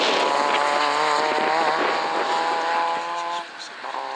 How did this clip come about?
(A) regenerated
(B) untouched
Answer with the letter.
B